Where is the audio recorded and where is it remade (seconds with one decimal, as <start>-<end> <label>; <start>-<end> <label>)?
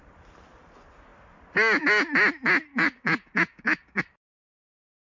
0.0-2.7 recorded; 2.7-4.0 remade; 4.0-5.1 recorded